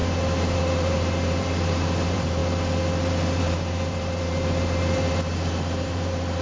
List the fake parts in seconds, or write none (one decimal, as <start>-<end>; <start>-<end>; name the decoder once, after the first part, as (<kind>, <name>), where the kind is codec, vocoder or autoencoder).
0.0-2.4 (vocoder, BigVGAN v2); 3.4-6.4